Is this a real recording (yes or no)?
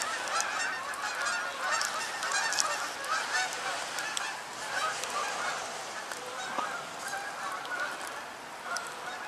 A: yes